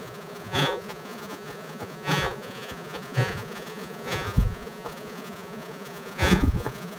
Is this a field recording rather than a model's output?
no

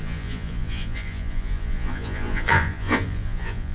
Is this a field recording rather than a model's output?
no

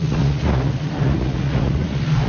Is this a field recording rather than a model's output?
no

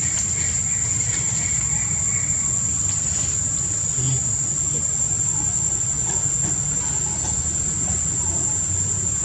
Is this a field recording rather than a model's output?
yes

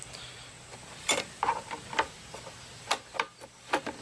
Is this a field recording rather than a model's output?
yes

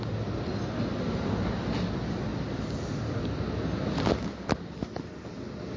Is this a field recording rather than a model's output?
yes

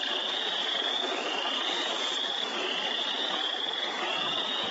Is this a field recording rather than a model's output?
no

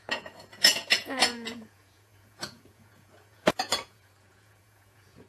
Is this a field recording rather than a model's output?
no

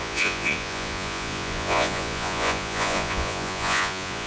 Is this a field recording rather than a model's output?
no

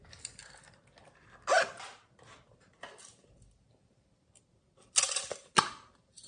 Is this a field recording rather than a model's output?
yes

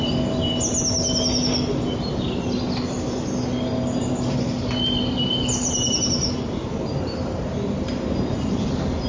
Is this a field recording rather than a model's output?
yes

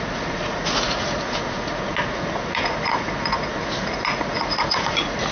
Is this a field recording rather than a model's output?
no